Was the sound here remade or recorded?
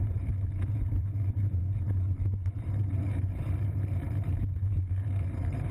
remade